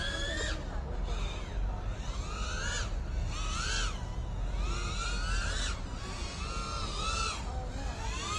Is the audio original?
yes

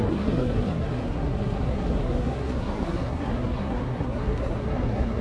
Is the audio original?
no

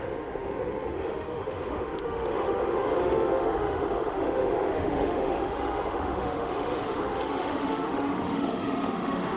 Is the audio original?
no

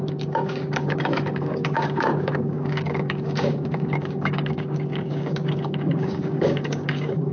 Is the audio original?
no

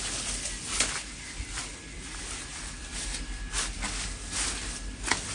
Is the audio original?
yes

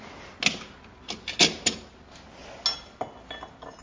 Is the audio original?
yes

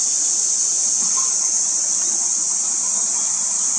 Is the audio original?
yes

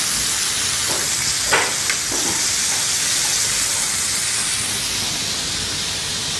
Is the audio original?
yes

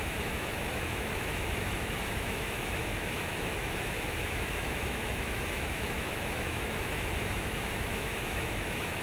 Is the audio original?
no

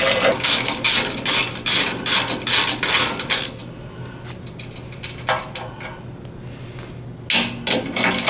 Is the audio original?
yes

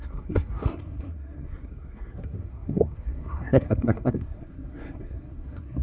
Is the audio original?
no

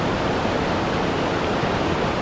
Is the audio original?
yes